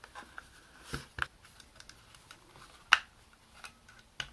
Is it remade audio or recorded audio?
recorded